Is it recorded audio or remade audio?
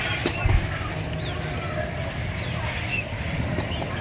recorded